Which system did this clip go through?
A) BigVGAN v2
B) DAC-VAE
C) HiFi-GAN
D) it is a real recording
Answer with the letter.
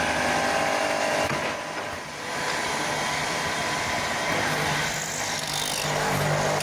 D